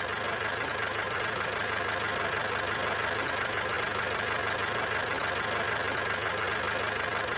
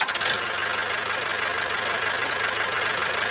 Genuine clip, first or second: second